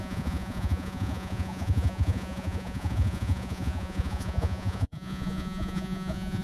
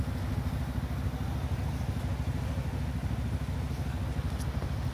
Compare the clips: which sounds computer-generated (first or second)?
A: first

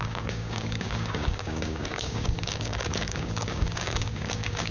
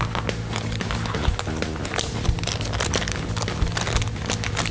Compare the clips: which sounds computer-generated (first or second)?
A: first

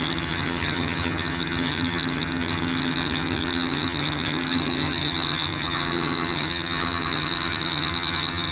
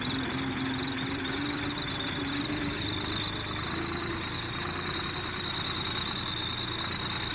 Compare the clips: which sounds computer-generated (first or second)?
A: first